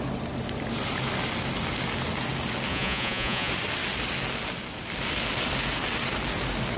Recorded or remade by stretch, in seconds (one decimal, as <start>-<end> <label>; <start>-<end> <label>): 0.0-2.7 recorded; 2.7-3.5 remade; 3.5-6.8 recorded